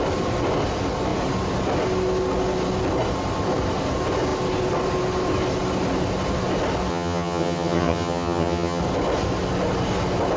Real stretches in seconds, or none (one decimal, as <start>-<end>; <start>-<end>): 0.0-6.9; 8.8-10.4